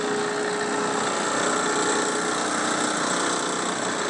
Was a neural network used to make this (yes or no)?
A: no